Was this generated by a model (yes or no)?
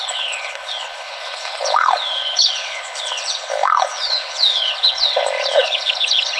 yes